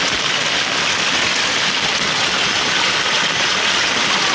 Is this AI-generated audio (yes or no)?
no